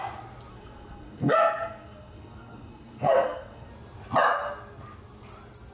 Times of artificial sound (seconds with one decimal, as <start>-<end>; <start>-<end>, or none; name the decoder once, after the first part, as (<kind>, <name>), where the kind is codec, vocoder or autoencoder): 0.5-3.7 (codec, SNAC)